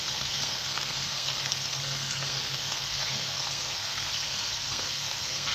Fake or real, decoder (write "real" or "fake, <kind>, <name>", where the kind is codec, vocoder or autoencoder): fake, codec, SNAC